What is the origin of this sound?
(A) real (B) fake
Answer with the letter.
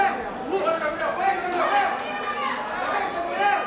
A